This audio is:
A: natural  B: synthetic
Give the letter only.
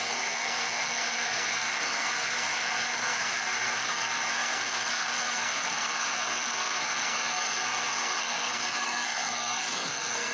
B